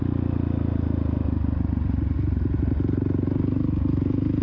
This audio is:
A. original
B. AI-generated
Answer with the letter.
A